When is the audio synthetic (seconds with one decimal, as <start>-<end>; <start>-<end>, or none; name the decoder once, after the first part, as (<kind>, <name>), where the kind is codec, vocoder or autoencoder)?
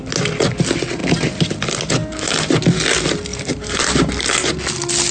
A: 2.0-2.5 (vocoder, BigVGAN v2); 3.3-4.1